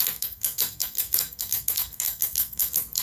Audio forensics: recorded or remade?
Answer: remade